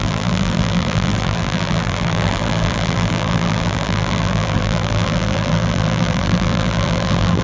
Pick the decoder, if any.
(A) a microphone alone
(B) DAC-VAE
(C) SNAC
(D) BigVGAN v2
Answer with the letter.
D